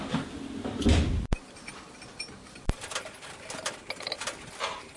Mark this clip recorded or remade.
recorded